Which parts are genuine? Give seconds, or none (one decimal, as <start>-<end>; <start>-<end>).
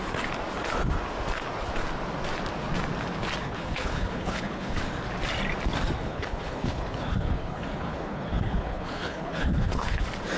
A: 0.0-3.4; 4.8-6.0; 10.0-10.4